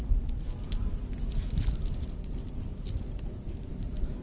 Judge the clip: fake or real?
real